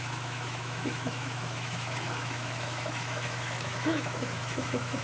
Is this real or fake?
fake